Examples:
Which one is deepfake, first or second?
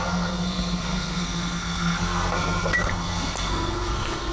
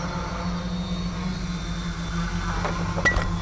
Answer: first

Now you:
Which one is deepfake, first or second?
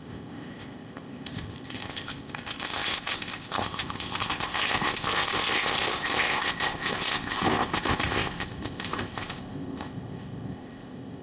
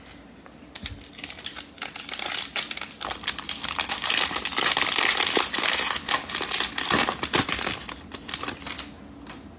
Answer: first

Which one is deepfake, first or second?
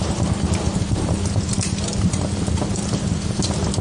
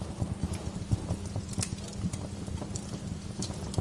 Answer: first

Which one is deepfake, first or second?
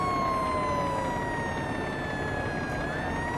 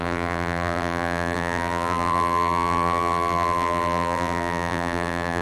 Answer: second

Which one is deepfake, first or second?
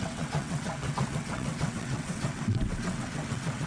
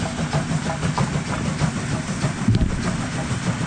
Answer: first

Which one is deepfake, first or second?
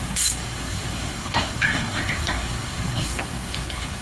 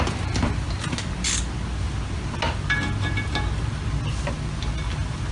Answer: first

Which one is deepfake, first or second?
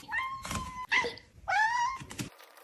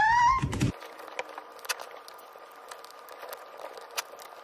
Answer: first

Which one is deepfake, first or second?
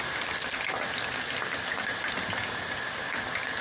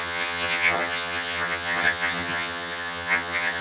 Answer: second